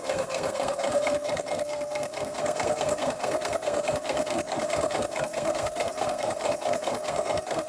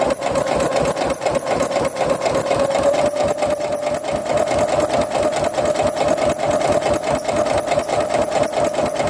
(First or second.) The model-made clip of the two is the first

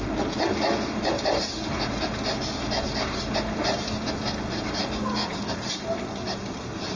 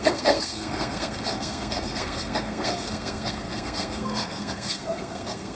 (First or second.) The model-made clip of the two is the second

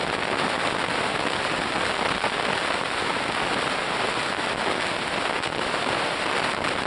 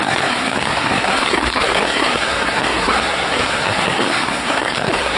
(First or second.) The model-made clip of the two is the second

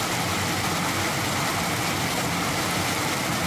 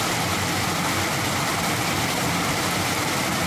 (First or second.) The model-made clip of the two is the second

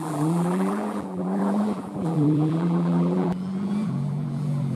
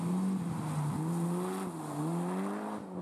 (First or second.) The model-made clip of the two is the first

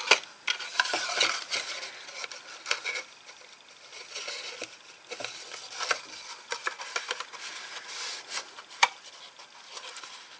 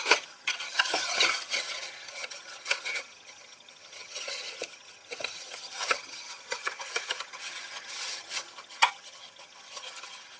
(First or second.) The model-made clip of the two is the second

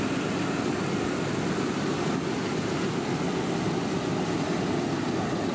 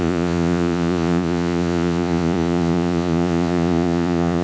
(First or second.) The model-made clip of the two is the second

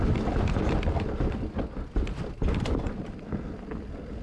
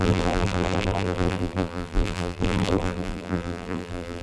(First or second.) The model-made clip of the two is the second